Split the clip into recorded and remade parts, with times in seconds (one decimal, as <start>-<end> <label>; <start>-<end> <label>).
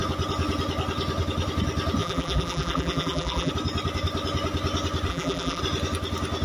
0.0-2.0 recorded; 2.0-3.5 remade; 3.5-5.1 recorded; 5.1-5.6 remade; 5.6-6.4 recorded